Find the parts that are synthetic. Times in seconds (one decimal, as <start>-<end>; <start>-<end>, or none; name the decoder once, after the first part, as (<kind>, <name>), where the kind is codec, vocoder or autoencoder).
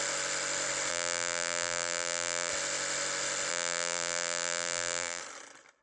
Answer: 0.9-2.5 (vocoder, BigVGAN v2); 3.5-5.2